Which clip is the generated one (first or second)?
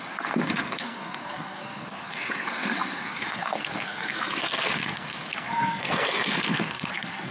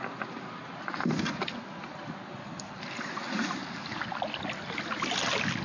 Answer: first